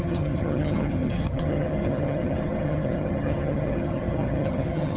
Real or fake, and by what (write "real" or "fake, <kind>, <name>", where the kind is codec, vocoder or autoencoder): fake, vocoder, HiFi-GAN